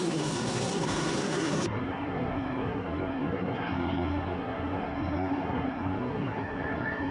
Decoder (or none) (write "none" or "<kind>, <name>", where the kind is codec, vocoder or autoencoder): codec, SNAC